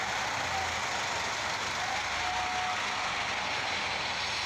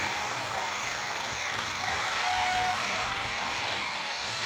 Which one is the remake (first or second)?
second